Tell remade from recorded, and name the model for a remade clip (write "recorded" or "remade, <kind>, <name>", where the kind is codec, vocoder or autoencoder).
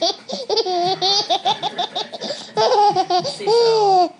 recorded